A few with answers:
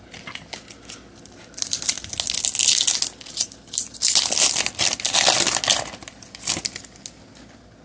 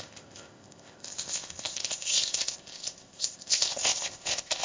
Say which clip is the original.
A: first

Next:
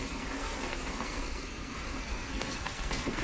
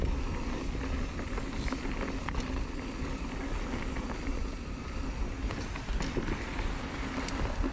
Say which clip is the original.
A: second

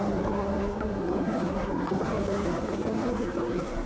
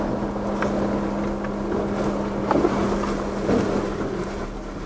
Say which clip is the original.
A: second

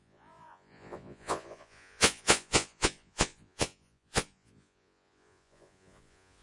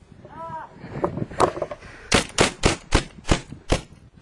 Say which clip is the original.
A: second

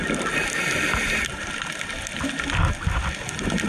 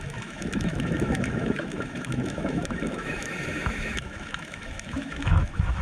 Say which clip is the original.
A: first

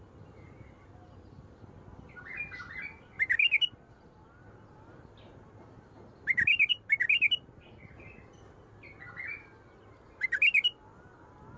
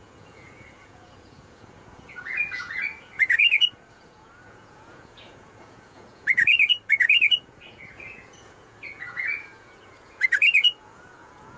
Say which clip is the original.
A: first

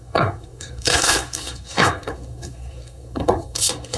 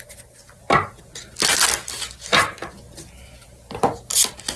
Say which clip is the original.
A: second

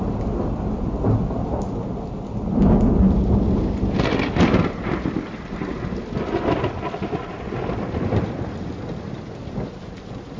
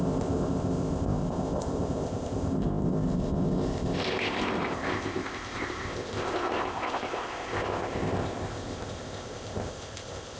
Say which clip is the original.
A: first